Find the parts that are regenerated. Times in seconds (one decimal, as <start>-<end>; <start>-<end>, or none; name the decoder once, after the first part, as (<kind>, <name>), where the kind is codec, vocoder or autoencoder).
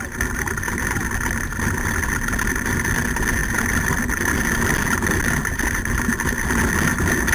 none